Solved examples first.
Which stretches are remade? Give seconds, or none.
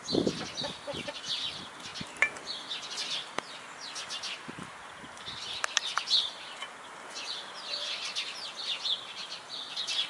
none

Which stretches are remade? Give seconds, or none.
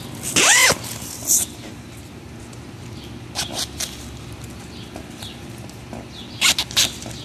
none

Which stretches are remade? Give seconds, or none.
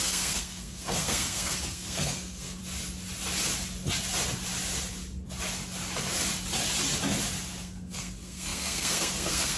0.0-2.6 (codec, SNAC); 7.6-9.6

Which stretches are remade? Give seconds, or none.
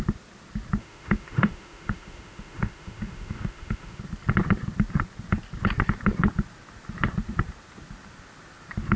0.8-4.0 (autoencoder, DAC-VAE)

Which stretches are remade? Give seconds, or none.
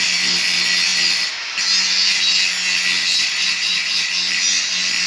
3.1-4.1 (vocoder, Vocos)